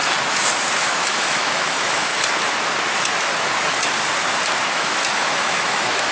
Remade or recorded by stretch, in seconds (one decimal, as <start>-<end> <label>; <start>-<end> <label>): 0.0-0.8 recorded; 0.8-2.1 remade; 2.1-4.7 recorded; 4.7-6.1 remade